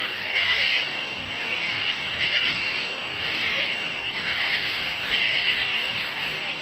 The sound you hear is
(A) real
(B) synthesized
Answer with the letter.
B